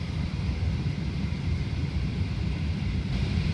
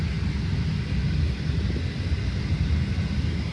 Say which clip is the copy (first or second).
first